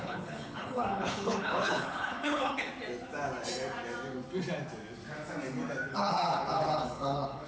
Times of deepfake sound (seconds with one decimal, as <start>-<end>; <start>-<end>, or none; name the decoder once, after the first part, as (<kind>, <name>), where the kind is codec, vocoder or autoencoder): 0.0-2.7 (codec, HILCodec); 5.9-7.5